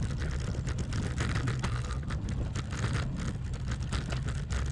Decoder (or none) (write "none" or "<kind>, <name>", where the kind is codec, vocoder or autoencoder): none